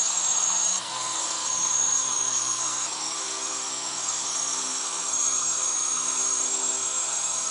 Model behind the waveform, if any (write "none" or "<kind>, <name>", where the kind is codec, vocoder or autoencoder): codec, SNAC